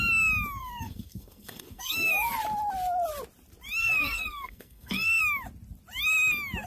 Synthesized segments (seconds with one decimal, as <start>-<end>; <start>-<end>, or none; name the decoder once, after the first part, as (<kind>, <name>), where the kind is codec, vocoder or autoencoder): 0.6-2.3 (codec, SNAC); 3.8-5.2